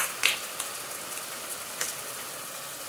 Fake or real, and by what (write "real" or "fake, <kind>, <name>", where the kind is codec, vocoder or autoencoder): real